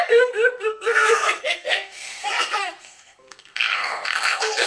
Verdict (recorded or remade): remade